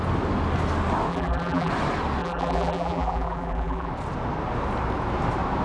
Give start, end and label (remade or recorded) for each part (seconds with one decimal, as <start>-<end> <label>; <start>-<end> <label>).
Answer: 0.0-1.1 recorded; 1.1-1.7 remade; 1.7-2.2 recorded; 2.2-3.9 remade; 3.9-5.6 recorded